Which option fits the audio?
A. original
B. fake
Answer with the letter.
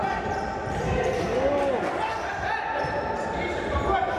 A